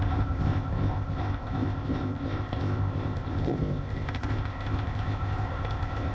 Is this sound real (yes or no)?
no